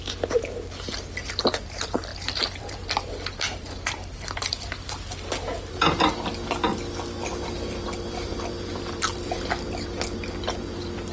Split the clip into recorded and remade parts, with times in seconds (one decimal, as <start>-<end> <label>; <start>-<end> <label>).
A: 0.0-2.1 recorded; 2.1-5.1 remade; 5.1-7.3 recorded; 7.3-9.2 remade; 9.2-11.1 recorded